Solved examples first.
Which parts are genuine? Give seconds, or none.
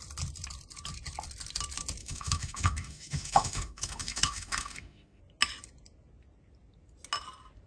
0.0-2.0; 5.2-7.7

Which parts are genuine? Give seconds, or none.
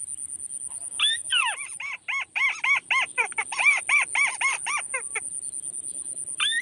0.0-6.6